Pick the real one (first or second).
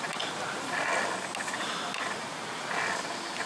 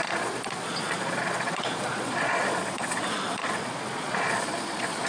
first